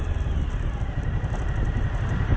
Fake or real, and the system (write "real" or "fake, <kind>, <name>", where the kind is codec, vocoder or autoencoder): real